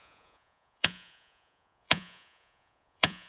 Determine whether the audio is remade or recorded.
remade